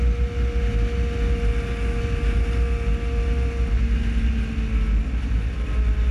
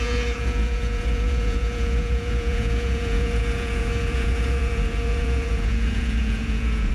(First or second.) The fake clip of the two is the second